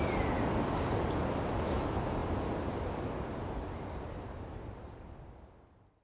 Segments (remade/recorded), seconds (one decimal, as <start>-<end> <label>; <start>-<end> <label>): 0.0-6.0 recorded